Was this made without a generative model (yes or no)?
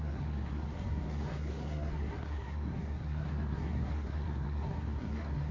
no